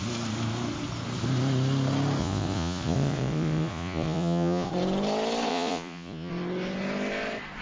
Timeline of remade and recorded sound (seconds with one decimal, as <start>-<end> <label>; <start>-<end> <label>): 0.0-2.2 recorded; 2.2-4.7 remade; 4.7-5.5 recorded; 5.5-6.3 remade; 6.3-7.6 recorded